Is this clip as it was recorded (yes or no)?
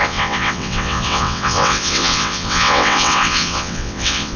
no